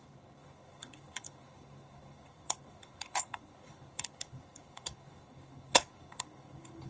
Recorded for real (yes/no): no